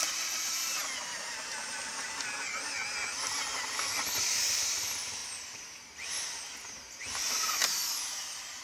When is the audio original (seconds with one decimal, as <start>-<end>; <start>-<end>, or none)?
0.0-5.2; 5.8-7.6